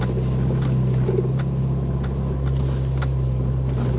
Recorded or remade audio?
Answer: recorded